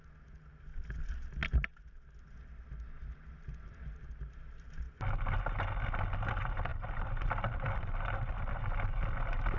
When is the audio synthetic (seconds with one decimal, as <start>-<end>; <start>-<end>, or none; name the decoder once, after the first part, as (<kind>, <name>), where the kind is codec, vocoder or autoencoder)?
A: none